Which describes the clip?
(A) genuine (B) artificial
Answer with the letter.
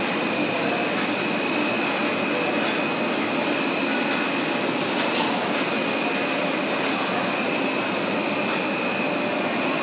A